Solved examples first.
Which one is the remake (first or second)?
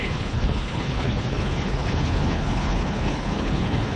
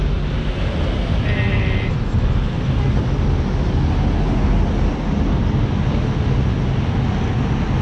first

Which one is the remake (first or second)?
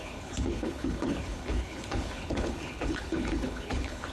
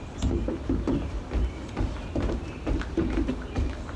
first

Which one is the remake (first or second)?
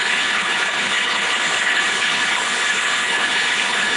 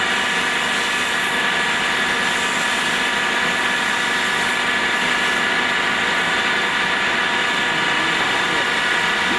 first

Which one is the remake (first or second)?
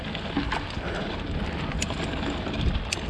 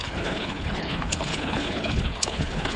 second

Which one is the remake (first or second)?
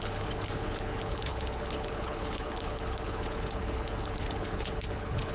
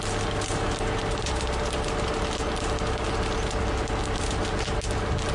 first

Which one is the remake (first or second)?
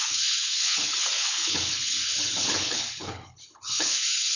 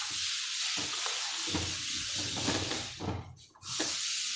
first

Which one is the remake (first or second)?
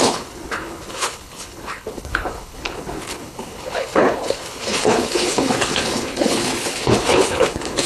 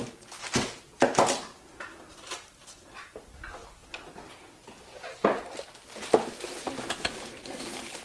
first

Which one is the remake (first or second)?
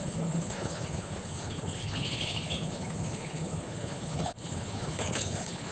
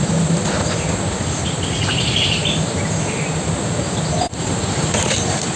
first